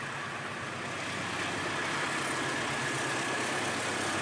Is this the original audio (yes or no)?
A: no